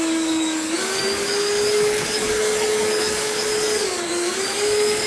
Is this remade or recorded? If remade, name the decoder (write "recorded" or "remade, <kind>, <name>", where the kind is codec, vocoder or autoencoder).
remade, codec, DAC